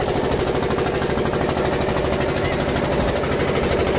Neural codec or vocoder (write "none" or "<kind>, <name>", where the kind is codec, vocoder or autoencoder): none